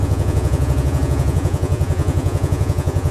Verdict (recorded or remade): remade